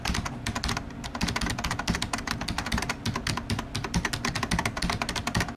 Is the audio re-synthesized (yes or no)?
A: no